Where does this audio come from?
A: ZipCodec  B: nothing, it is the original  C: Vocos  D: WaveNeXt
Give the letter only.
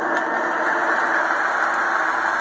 B